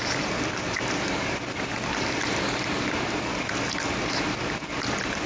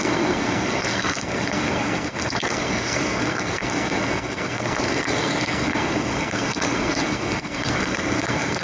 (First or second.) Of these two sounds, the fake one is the second